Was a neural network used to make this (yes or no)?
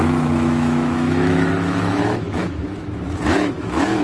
yes